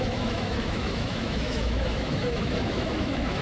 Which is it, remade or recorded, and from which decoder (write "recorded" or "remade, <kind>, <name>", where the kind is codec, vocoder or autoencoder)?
remade, autoencoder, DAC-VAE